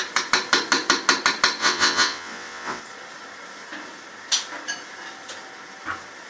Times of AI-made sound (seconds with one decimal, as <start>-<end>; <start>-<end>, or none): 1.6-2.8